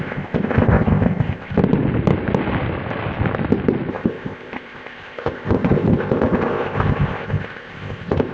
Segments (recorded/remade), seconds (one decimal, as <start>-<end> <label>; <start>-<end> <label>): 0.0-1.6 remade; 1.6-3.9 recorded; 3.9-8.3 remade